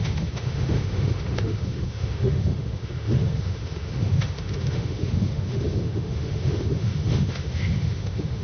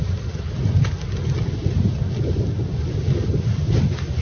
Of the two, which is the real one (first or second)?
second